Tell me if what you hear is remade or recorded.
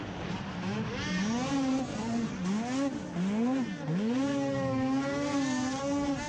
recorded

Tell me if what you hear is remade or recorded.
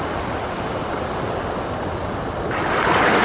recorded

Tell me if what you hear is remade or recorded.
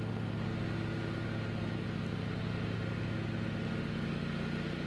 recorded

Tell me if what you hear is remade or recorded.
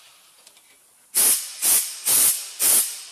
recorded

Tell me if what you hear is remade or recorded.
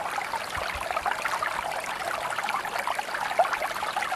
recorded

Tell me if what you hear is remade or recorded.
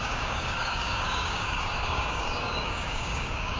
remade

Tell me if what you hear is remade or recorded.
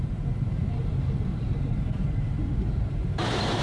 remade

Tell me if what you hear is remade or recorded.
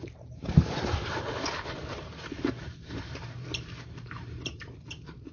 remade